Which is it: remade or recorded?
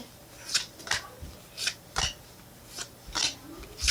remade